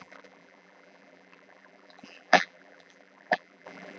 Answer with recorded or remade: remade